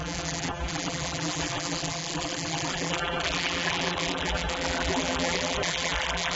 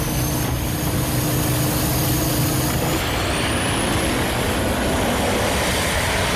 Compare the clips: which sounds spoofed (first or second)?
first